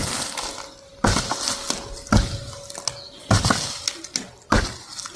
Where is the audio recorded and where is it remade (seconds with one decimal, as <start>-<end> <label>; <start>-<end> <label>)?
0.0-5.2 recorded